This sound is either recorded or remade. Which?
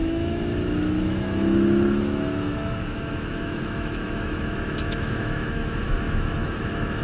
remade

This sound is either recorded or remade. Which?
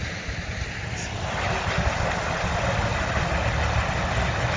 recorded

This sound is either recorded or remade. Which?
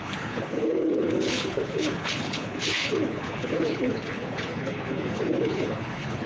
remade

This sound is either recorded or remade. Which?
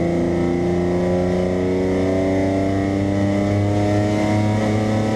recorded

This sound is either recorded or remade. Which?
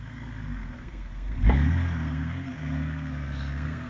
remade